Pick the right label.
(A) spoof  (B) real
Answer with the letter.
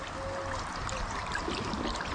B